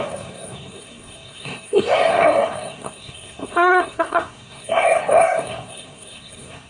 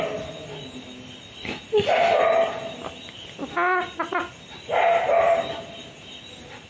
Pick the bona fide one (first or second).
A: second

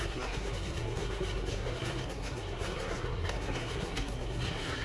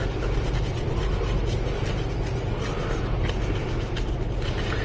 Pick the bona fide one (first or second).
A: second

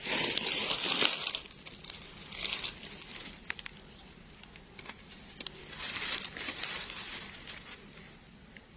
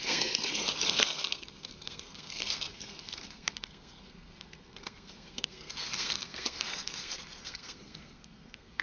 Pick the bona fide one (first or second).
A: first